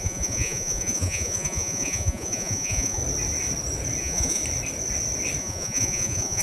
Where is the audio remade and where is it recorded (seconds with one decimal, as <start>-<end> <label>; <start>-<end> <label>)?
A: 0.0-3.0 remade; 3.0-4.0 recorded; 4.0-4.4 remade; 4.4-5.4 recorded; 5.4-6.4 remade